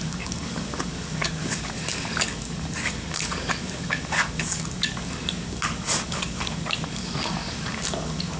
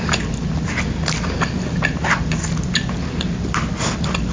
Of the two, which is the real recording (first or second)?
second